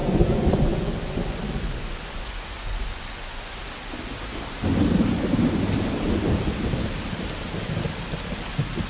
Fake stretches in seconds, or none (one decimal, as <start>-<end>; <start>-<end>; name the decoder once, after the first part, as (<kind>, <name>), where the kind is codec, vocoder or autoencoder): 0.0-3.6 (vocoder, Vocos)